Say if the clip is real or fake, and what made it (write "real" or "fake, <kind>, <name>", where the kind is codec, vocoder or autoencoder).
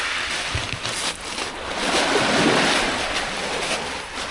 real